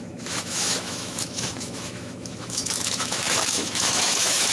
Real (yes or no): no